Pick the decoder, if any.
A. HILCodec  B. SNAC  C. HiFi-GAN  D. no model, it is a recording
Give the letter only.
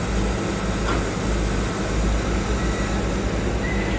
D